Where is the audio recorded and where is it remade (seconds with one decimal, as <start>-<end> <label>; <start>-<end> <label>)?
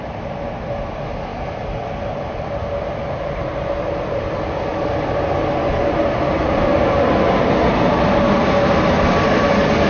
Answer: 0.0-9.9 recorded